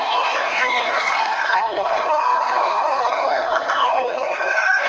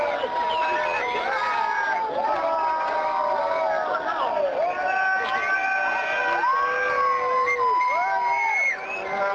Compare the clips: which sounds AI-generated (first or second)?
first